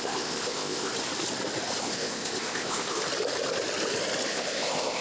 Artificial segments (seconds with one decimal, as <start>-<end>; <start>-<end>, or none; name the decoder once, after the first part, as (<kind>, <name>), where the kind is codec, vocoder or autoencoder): 0.0-0.9 (codec, ZipCodec); 1.8-3.0; 4.3-5.0